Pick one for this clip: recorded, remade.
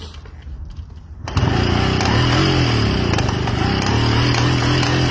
recorded